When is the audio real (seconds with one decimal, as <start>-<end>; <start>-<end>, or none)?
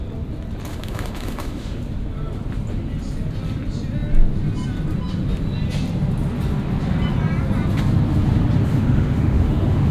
0.0-0.7; 1.8-8.7